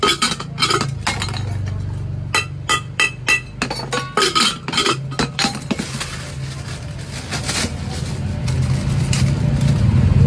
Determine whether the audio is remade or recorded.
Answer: recorded